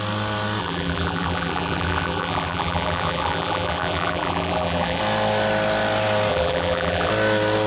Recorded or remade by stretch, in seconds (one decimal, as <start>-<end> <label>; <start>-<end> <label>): 0.0-0.6 recorded; 0.6-5.0 remade; 5.0-6.3 recorded; 6.3-7.1 remade; 7.1-7.7 recorded